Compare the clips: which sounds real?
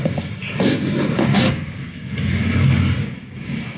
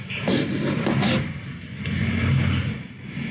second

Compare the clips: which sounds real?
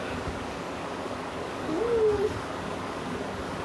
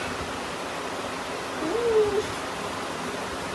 second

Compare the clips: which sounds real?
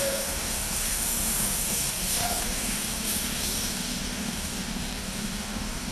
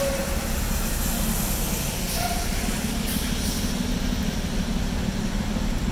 second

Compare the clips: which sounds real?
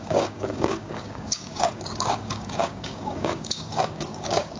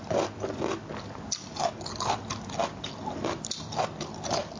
second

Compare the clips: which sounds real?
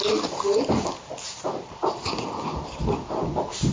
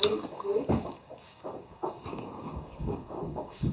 first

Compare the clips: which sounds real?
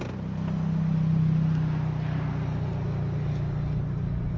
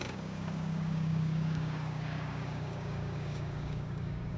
first